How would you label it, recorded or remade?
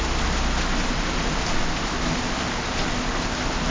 recorded